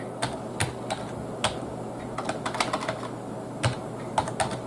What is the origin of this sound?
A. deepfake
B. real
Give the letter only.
B